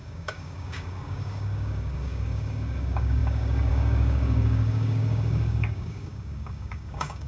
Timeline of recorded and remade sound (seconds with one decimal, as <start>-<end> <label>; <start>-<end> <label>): 0.0-7.3 remade